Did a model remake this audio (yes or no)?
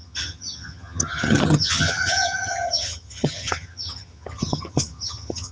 yes